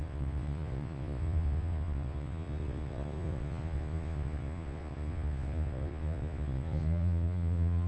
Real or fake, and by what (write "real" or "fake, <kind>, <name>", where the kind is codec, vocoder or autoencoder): fake, vocoder, Vocos